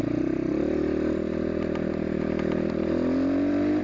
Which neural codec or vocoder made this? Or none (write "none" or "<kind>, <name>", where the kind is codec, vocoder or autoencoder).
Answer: none